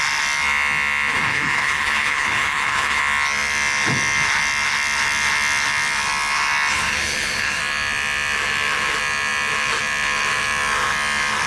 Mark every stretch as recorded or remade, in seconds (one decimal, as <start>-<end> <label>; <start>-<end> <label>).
0.0-1.1 recorded; 1.1-3.0 remade; 3.0-6.7 recorded; 6.7-7.6 remade; 7.6-11.5 recorded